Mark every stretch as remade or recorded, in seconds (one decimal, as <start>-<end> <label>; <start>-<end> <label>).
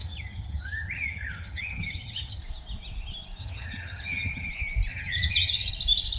0.0-2.4 remade; 2.4-3.4 recorded; 3.4-4.5 remade; 4.5-4.9 recorded; 4.9-5.7 remade; 5.7-6.2 recorded